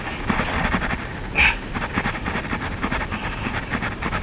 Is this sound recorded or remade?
recorded